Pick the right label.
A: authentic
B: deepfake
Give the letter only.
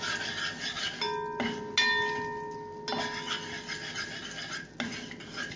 A